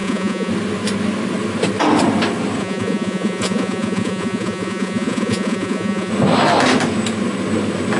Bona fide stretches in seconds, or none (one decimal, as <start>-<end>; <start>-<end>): 0.5-2.6; 6.1-8.0

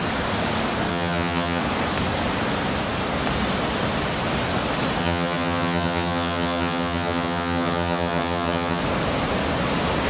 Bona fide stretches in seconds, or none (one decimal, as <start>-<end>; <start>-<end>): 0.0-0.9; 1.6-5.0; 8.8-10.1